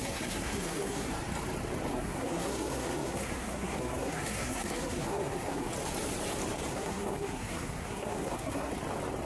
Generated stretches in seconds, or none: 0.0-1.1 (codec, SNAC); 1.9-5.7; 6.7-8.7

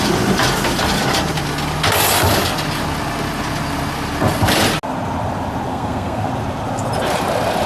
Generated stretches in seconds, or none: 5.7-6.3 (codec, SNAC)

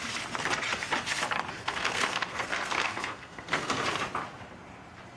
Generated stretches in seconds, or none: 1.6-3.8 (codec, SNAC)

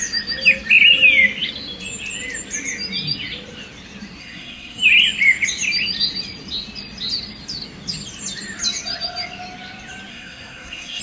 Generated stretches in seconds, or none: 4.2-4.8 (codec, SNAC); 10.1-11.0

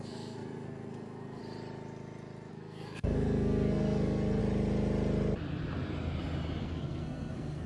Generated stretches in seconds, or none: 0.0-1.4 (codec, SNAC); 2.5-4.4; 6.6-7.7